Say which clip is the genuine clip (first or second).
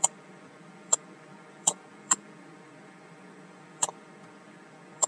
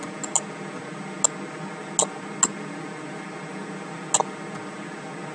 second